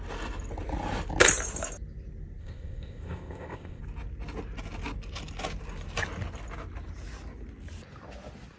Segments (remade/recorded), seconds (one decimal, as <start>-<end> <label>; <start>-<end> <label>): 0.0-2.4 recorded; 2.4-3.8 remade; 3.8-8.6 recorded